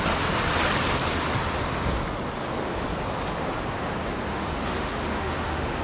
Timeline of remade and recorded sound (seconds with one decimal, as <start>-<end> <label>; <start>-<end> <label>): 0.0-4.3 recorded; 4.3-5.8 remade